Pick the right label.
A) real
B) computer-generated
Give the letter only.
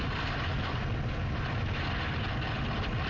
A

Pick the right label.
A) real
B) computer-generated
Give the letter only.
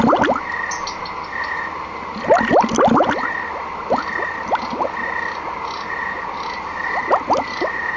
A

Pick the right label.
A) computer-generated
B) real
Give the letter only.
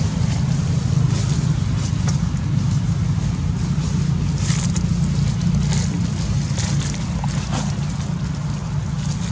B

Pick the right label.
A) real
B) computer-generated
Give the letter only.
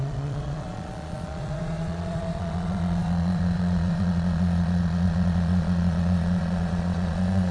B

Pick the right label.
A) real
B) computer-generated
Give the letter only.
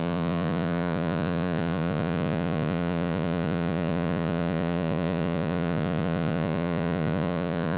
B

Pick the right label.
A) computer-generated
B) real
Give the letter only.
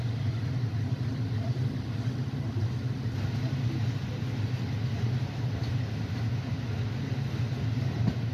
B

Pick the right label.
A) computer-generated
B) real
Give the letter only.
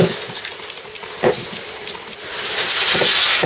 B